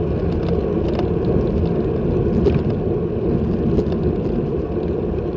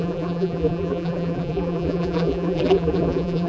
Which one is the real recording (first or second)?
first